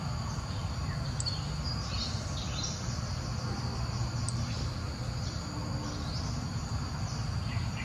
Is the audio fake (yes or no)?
no